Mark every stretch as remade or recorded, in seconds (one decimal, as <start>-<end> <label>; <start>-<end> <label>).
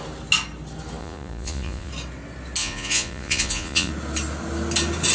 0.0-1.0 recorded; 1.0-1.9 remade; 1.9-2.6 recorded; 2.6-3.9 remade; 3.9-5.1 recorded